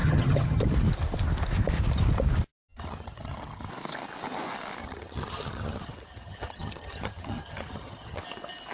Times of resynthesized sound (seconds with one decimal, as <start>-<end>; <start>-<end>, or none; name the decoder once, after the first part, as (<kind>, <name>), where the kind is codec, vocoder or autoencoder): 0.0-0.6 (vocoder, HiFi-GAN); 2.7-3.7; 4.8-8.2